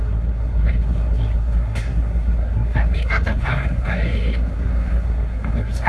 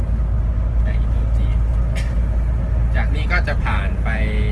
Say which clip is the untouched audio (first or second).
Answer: second